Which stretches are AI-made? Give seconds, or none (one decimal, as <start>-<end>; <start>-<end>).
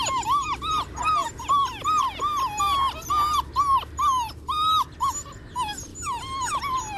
none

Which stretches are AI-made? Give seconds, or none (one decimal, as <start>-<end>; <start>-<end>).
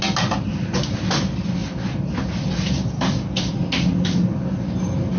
none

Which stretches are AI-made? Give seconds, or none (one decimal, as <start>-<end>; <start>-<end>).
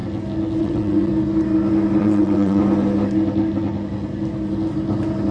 0.6-1.1; 2.0-2.6